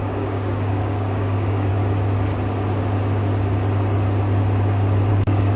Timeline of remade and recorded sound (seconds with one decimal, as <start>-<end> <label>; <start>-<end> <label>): 0.0-1.7 remade; 1.7-5.1 recorded; 5.1-5.6 remade